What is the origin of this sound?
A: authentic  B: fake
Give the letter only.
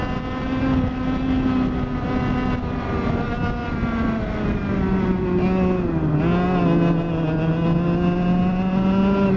A